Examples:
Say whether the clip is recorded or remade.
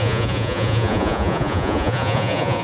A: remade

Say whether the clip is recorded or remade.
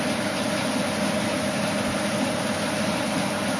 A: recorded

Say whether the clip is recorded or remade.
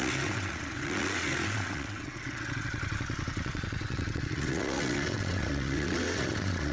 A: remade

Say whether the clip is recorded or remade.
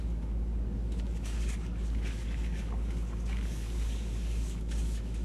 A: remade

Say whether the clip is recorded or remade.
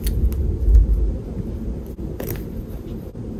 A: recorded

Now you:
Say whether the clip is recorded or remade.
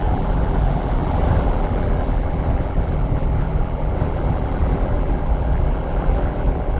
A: remade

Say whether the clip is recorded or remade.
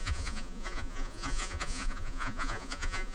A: remade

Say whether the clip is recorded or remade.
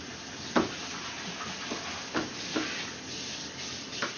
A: recorded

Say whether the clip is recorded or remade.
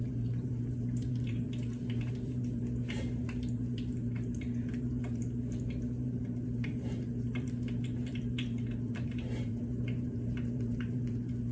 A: remade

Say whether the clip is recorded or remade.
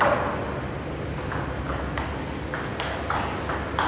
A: recorded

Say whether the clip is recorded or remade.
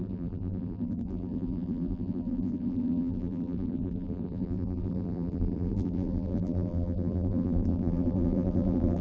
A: remade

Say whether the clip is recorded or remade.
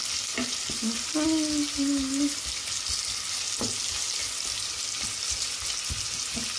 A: recorded